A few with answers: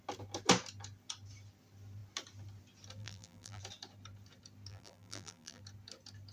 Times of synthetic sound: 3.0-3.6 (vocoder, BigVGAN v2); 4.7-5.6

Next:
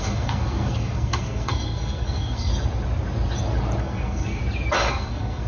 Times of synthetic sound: 0.0-2.5 (codec, SNAC); 3.8-4.4; 4.9-5.5

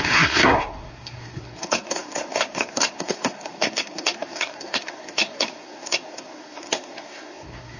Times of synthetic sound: 0.0-7.8 (codec, SNAC)